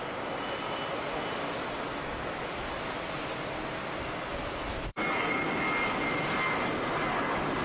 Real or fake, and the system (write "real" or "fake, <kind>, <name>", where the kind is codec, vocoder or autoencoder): real